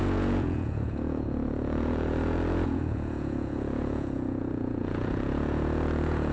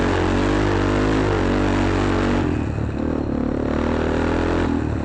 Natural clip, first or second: second